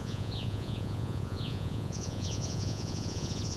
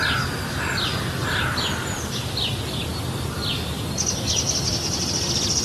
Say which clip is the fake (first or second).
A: first